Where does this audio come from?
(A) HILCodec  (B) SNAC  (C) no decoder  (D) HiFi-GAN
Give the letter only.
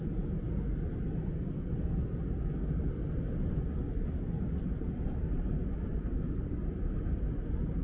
C